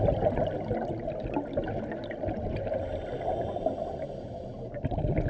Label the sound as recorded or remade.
recorded